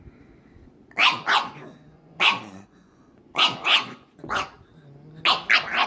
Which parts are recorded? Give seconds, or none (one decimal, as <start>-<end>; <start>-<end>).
0.0-1.0; 4.5-5.9